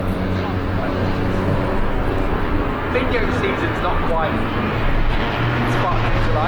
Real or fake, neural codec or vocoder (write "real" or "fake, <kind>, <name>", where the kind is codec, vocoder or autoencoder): real